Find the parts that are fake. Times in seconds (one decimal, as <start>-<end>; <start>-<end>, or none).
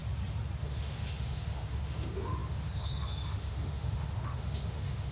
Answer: 0.6-5.1